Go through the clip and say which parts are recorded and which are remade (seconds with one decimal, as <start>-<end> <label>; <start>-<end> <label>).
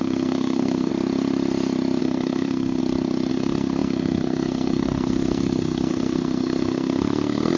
0.0-0.9 remade; 0.9-2.0 recorded; 2.0-2.8 remade; 2.8-3.3 recorded; 3.3-7.6 remade